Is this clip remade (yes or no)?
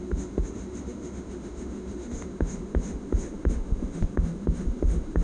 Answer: yes